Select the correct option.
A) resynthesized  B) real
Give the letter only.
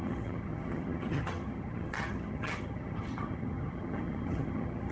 A